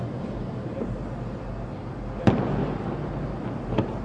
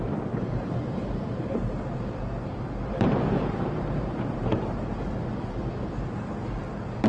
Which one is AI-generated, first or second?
second